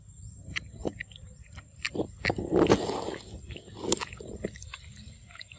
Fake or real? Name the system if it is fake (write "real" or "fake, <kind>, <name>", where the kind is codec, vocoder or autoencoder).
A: real